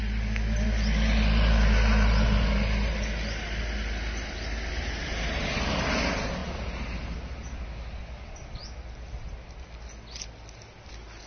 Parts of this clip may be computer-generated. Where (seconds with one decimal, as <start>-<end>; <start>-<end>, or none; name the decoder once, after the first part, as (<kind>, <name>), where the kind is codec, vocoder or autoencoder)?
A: none